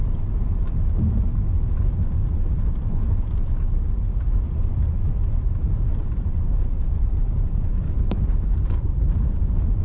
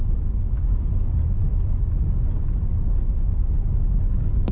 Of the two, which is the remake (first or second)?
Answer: first